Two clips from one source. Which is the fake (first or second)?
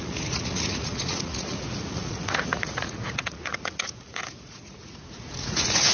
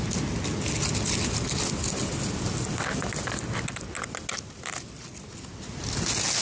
first